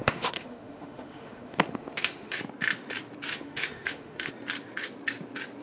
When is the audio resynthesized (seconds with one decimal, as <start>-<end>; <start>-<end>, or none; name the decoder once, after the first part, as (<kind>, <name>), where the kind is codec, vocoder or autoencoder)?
0.0-2.4 (autoencoder, DAC-VAE); 3.3-4.3